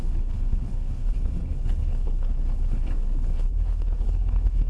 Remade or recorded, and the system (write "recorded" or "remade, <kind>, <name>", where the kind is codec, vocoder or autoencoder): remade, codec, HILCodec